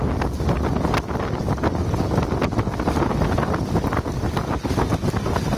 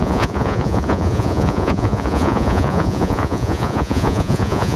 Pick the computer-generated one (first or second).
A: second